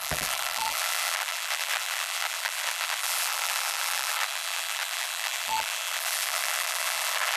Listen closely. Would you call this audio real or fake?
fake